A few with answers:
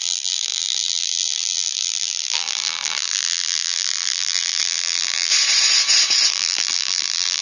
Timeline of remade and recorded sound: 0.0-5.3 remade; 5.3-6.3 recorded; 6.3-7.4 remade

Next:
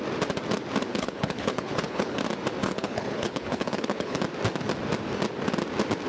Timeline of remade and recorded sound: 0.0-0.9 recorded; 0.9-2.2 remade; 2.2-2.6 recorded; 2.6-4.2 remade; 4.2-6.1 recorded

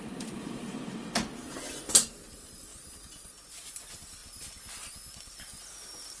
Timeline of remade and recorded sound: 0.0-1.1 remade; 1.1-2.1 recorded; 2.1-2.7 remade; 2.7-3.5 recorded; 3.5-4.2 remade; 4.2-6.2 recorded

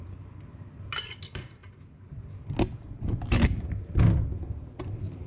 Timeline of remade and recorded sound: 0.0-5.3 recorded